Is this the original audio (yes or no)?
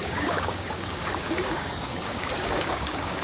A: no